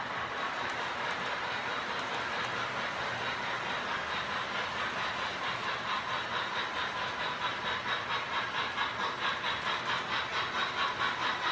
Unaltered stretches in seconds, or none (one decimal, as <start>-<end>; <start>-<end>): 0.0-1.6; 2.4-11.5